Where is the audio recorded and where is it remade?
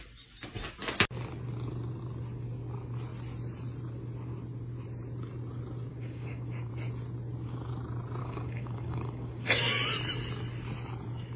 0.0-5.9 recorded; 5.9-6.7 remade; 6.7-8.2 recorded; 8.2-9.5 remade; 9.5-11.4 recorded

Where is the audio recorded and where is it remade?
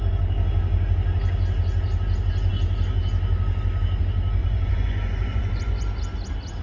0.0-4.4 recorded; 4.4-5.8 remade; 5.8-6.6 recorded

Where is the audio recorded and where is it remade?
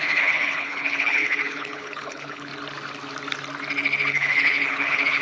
0.0-2.5 remade; 2.5-4.1 recorded; 4.1-5.2 remade